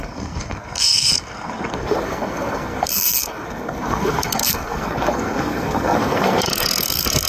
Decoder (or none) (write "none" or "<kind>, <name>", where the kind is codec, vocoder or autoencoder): codec, SNAC